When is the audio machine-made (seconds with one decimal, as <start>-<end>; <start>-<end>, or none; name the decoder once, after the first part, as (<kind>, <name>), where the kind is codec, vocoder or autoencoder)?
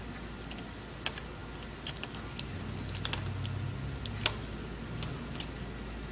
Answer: none